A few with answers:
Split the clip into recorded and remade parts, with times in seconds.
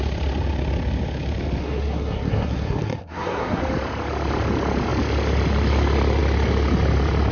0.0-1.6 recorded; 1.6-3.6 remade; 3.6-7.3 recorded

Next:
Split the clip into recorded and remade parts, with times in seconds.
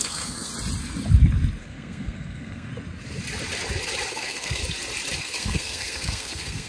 0.0-0.5 remade; 0.5-1.6 recorded; 1.6-2.7 remade; 2.7-4.1 recorded; 4.1-4.6 remade; 4.6-5.2 recorded; 5.2-6.7 remade